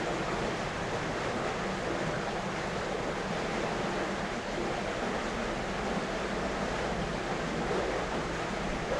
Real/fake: real